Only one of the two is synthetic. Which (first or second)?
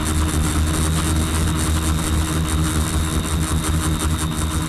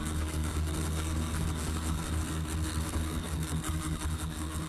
second